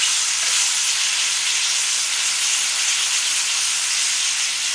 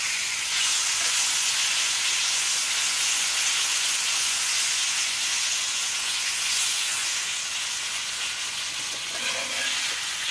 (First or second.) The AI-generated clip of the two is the second